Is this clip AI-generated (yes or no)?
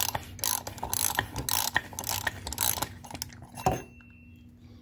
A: no